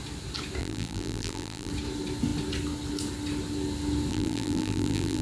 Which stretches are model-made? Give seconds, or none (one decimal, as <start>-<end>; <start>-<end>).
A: 0.6-1.7; 4.1-5.2